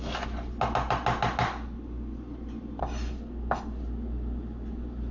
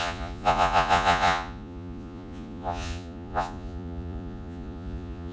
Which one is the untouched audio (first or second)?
first